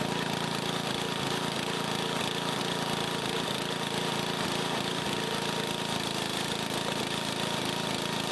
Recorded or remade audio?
recorded